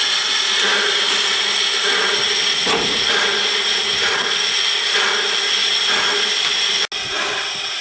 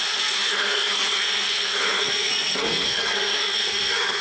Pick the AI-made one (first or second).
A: second